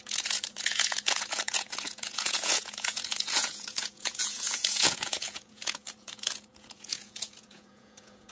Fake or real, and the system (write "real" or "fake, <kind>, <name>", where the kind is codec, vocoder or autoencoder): fake, vocoder, Vocos